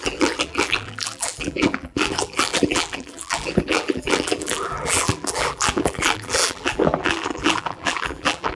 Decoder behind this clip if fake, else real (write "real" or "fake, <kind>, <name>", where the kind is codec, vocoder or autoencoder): fake, vocoder, BigVGAN v2